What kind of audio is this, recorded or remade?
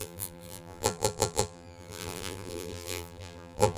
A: remade